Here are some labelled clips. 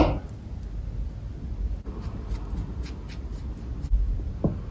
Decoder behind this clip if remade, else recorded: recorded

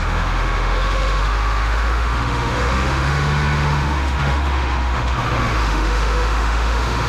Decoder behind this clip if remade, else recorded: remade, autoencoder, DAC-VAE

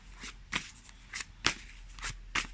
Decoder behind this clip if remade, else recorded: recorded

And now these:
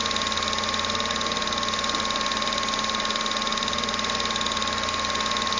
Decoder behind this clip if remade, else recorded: recorded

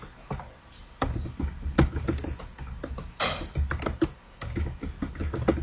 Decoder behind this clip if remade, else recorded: recorded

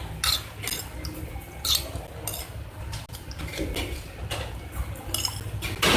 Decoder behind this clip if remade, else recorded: recorded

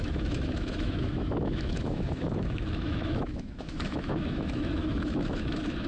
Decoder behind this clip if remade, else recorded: remade, autoencoder, DAC-VAE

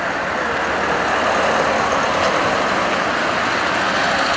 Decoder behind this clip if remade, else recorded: recorded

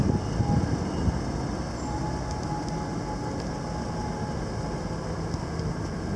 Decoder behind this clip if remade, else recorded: recorded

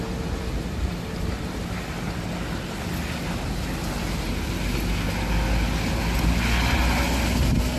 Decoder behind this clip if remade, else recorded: recorded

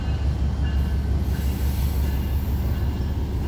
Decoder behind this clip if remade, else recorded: recorded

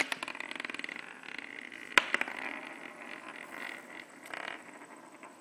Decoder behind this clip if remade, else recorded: recorded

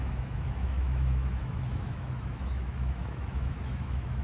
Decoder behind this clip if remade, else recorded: remade, autoencoder, DAC-VAE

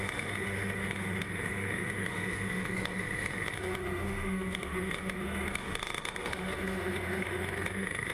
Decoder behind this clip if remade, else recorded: remade, autoencoder, DAC-VAE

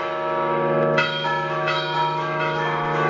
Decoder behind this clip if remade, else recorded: remade, autoencoder, DAC-VAE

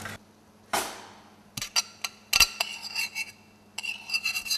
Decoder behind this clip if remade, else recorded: recorded